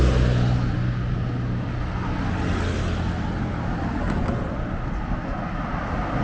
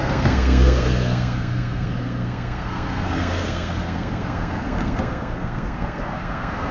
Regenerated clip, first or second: second